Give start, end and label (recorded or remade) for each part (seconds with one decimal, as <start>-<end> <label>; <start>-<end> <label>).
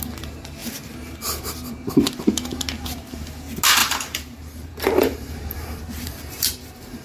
0.0-3.8 recorded; 3.8-7.0 remade